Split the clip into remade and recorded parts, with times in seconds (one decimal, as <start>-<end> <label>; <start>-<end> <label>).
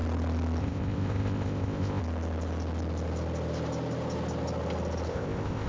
0.0-0.6 recorded; 0.6-2.0 remade; 2.0-5.1 recorded; 5.1-5.7 remade